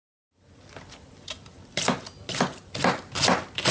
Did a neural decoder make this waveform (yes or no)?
no